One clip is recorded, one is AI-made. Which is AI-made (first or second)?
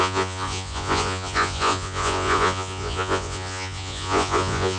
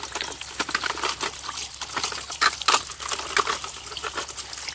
first